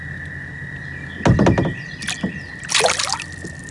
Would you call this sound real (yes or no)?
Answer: yes